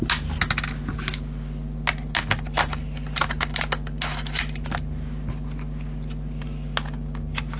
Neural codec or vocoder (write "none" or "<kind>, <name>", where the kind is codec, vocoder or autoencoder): none